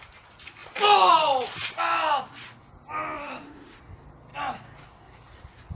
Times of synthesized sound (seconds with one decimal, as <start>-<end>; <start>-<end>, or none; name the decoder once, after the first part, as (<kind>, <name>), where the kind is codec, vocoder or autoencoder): 3.2-3.8 (autoencoder, DAC-VAE)